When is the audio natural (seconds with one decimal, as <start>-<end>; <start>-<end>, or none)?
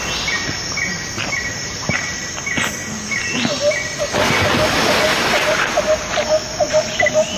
0.0-1.5; 2.3-5.1; 5.8-7.4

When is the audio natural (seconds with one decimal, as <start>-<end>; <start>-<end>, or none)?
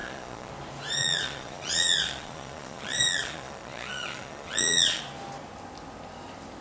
0.5-1.0; 5.0-6.6